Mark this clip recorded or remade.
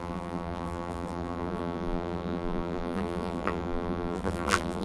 remade